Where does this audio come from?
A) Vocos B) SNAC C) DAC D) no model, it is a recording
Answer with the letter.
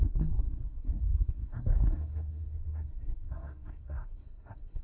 B